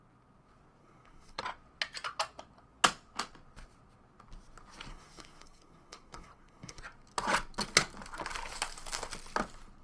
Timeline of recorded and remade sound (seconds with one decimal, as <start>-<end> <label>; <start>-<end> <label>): 0.0-0.8 recorded; 0.8-1.4 remade; 1.4-4.9 recorded; 4.9-6.8 remade; 6.8-9.8 recorded